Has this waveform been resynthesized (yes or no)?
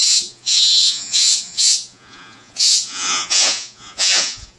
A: yes